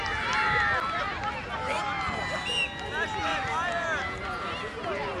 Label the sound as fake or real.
real